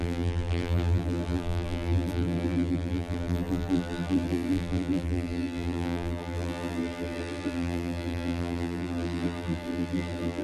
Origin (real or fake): fake